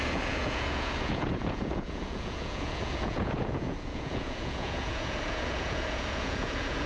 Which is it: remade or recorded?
remade